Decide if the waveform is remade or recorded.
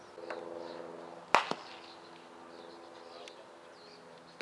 recorded